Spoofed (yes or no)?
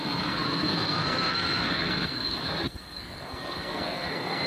yes